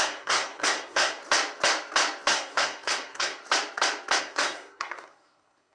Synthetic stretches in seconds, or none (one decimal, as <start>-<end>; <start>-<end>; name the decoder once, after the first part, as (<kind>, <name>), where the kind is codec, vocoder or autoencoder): 0.0-1.2 (codec, SNAC); 2.3-3.4; 4.2-5.7